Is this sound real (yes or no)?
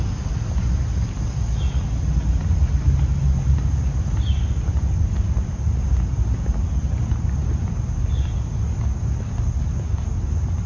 yes